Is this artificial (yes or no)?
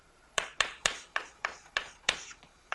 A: yes